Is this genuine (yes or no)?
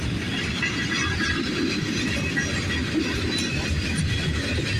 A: yes